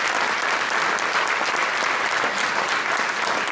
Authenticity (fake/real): real